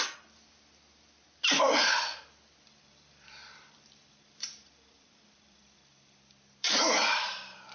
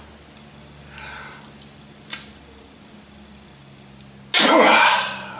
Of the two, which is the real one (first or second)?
second